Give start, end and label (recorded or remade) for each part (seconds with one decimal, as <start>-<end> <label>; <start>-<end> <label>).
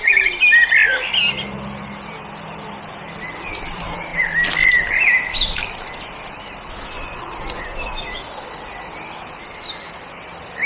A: 0.0-10.7 recorded